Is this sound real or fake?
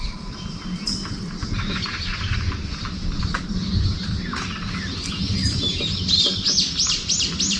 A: real